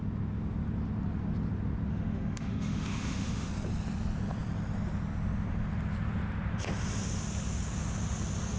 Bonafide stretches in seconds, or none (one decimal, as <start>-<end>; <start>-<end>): 0.0-1.9; 3.5-8.6